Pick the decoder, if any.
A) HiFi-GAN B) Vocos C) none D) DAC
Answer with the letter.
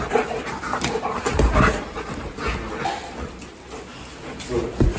C